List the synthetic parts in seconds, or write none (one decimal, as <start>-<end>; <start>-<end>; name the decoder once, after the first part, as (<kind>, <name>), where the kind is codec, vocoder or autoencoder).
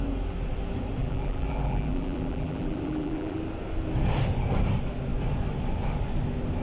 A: 1.0-3.4 (vocoder, BigVGAN v2)